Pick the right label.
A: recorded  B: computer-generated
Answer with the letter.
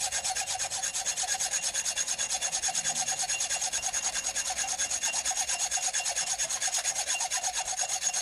A